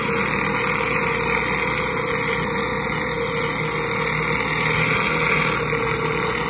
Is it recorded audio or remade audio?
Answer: recorded